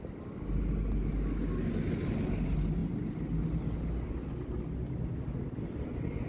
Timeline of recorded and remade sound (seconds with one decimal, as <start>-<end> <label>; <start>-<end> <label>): 0.0-6.3 recorded